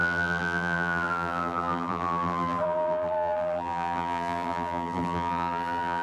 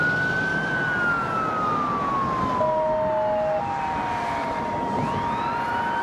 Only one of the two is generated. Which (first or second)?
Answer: first